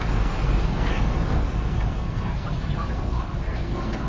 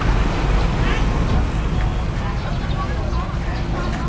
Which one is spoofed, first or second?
first